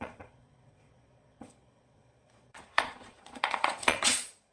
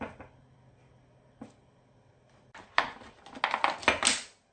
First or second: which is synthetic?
first